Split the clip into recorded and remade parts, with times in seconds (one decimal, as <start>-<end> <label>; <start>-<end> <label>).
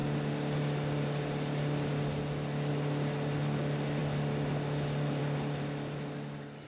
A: 0.0-6.7 recorded